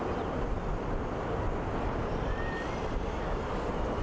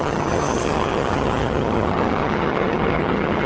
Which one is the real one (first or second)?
first